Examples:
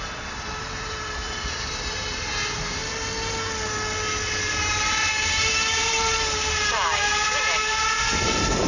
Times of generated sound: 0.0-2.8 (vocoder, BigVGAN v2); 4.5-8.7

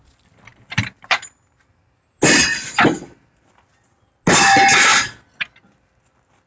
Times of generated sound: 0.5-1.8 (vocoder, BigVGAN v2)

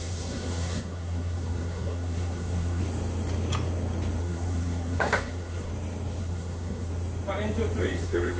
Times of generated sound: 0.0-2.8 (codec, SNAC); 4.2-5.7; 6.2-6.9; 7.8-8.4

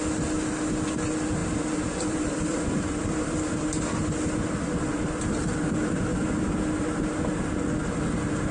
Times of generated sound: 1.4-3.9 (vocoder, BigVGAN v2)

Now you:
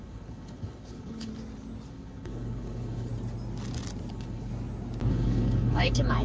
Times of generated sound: 0.0-1.3 (codec, HILCodec); 1.9-3.1; 4.1-4.5; 5.1-6.2

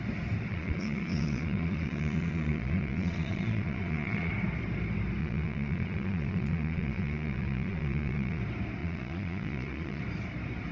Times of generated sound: 0.5-4.3 (vocoder, Vocos); 5.2-8.4; 8.8-10.0